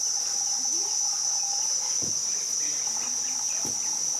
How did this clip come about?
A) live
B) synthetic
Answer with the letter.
A